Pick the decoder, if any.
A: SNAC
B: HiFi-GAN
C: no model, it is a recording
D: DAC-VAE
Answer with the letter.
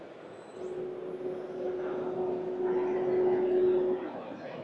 C